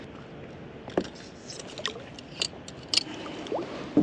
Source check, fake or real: real